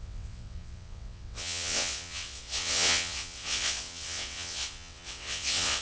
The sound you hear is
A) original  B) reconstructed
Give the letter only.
B